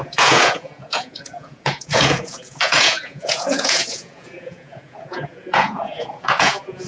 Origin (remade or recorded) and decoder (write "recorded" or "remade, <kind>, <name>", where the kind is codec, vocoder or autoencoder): remade, vocoder, Vocos